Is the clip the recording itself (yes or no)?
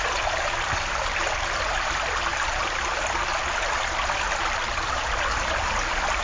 yes